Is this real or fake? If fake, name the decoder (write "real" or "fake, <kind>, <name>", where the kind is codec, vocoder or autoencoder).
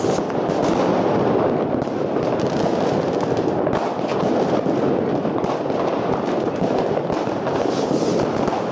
real